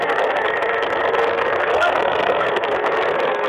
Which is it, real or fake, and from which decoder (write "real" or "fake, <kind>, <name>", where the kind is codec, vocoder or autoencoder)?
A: fake, codec, SNAC